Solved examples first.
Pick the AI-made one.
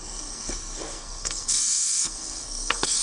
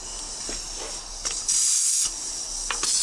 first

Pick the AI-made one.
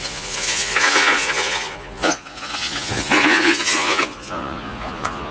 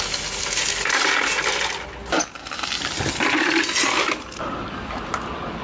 first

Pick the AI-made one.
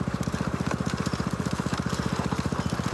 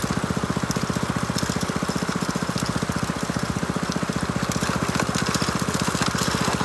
first